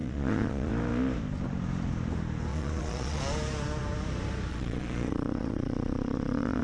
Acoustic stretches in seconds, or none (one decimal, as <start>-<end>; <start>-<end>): 0.7-2.5; 3.2-4.5